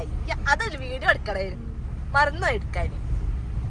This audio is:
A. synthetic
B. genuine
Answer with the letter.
B